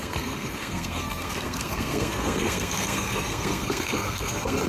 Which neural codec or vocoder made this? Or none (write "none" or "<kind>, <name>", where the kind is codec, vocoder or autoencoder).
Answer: codec, SNAC